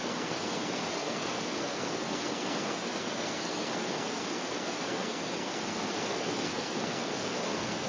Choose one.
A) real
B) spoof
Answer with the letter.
B